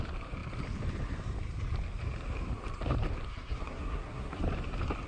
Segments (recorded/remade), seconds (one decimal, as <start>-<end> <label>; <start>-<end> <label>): 0.0-3.3 recorded; 3.3-4.4 remade; 4.4-5.1 recorded